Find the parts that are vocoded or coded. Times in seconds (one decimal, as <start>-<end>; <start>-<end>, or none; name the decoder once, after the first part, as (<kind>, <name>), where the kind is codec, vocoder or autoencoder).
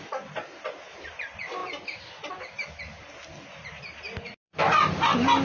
none